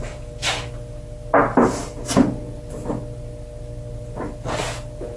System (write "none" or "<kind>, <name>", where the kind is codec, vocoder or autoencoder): none